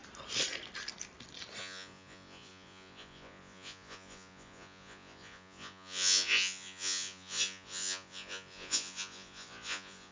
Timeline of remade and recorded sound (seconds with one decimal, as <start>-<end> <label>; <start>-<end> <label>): 0.0-1.6 recorded; 1.6-10.1 remade